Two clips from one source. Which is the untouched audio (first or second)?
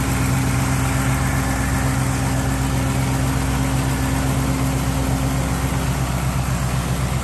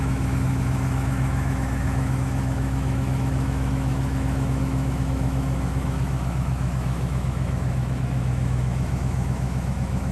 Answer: first